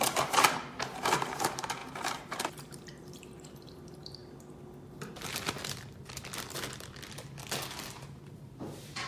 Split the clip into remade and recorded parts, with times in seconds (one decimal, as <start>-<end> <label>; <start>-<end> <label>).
0.0-4.2 remade; 4.2-7.9 recorded; 7.9-9.1 remade